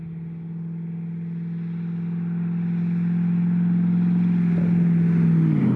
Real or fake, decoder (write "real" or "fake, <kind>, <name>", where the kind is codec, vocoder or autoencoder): real